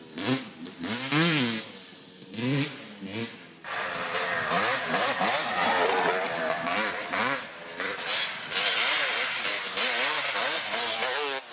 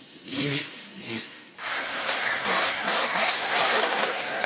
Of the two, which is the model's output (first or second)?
second